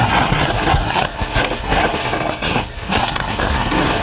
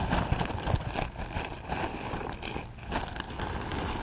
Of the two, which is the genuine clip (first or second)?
second